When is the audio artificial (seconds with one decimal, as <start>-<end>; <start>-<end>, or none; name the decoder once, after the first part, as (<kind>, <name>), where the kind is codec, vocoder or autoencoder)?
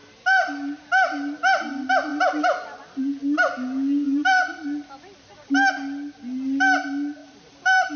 0.0-0.8 (vocoder, BigVGAN v2); 7.2-8.0